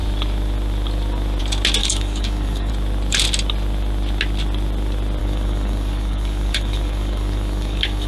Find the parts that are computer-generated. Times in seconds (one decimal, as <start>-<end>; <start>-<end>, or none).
1.8-2.7; 5.2-8.1